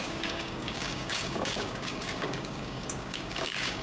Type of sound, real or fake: fake